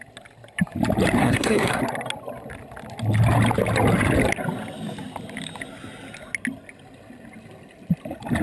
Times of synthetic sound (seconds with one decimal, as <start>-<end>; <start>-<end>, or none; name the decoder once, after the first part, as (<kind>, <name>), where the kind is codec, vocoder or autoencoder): 1.2-1.8 (codec, SNAC)